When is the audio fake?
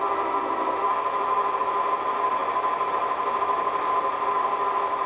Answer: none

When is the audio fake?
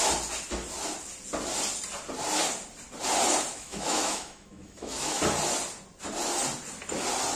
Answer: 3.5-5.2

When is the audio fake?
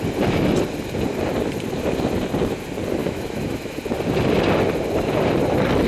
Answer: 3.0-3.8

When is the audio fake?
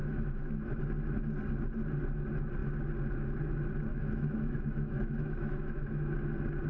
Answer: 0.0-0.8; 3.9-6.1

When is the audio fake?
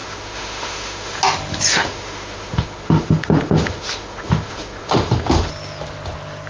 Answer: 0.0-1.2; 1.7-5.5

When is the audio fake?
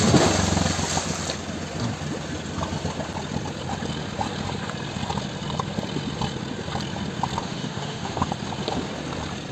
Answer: 7.4-8.3